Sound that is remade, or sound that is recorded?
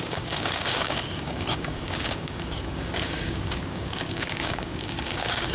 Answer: remade